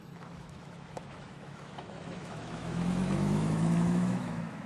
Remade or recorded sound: remade